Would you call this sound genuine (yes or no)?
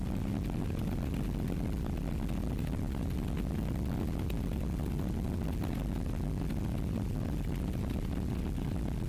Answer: yes